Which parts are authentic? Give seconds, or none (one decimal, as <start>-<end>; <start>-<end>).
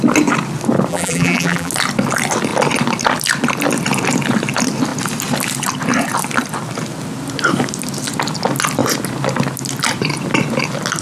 0.0-0.9; 1.7-11.0